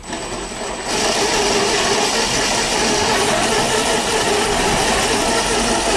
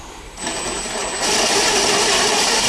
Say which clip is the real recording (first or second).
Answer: first